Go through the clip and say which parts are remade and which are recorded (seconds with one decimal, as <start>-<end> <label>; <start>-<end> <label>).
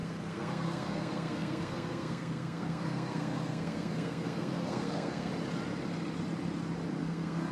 0.0-5.3 remade; 5.3-7.0 recorded; 7.0-7.5 remade